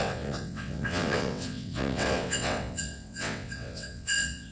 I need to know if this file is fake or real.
fake